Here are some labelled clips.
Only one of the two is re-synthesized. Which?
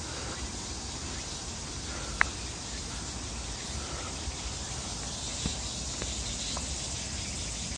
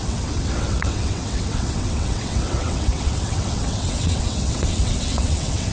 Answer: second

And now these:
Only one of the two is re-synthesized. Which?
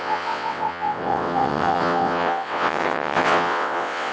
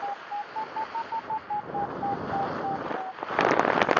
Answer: first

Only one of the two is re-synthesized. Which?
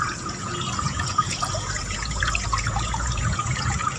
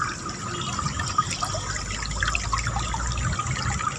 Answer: first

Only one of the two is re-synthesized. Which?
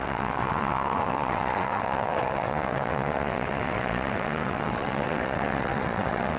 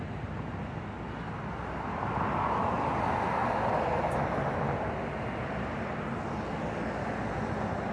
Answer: first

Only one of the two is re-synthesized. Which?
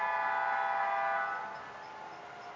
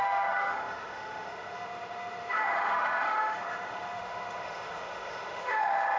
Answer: second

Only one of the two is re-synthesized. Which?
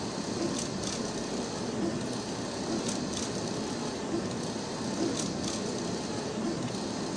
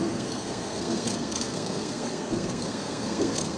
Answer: second